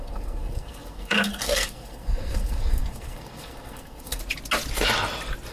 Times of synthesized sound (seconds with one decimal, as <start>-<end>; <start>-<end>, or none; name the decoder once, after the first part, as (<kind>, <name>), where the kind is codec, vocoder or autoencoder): 0.0-4.2 (codec, SNAC)